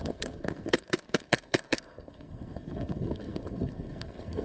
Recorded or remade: remade